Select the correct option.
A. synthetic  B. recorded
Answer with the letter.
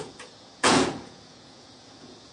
A